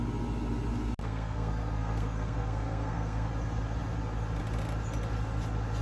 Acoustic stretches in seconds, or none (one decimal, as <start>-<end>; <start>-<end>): 0.0-1.0; 3.3-5.8